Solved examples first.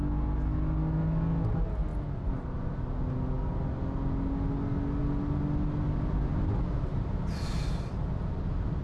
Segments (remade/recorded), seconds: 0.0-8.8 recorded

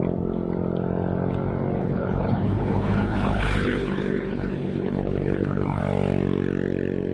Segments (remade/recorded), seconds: 0.0-1.8 recorded; 1.8-5.8 remade; 5.8-7.1 recorded